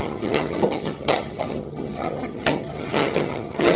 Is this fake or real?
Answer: fake